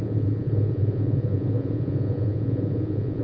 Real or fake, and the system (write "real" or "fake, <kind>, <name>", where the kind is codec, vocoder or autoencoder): fake, vocoder, Vocos